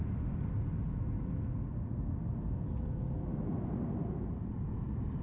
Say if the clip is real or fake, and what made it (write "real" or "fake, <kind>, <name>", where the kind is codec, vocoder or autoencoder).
real